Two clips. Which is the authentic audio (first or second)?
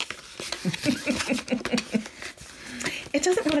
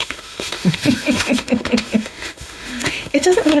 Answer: first